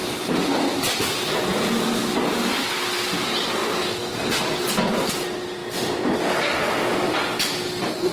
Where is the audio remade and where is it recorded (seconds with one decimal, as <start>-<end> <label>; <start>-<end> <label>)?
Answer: 0.0-8.1 recorded